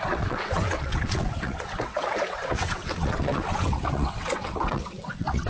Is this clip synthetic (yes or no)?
yes